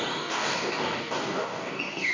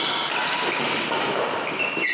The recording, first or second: second